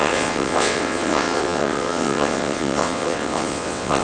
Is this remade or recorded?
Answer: remade